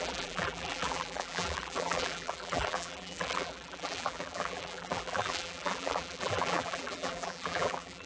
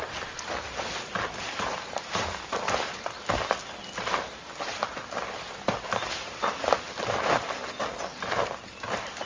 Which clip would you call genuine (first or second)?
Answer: second